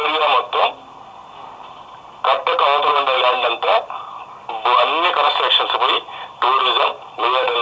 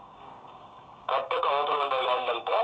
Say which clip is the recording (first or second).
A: first